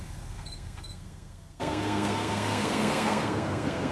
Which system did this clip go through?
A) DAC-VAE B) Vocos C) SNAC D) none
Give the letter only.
C